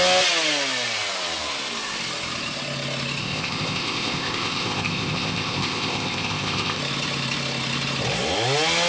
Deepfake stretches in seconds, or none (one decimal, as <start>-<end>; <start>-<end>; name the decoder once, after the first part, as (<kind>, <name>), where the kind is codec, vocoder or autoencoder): 3.2-6.8 (codec, ZipCodec)